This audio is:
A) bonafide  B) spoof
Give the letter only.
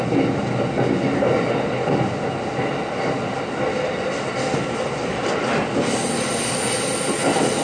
A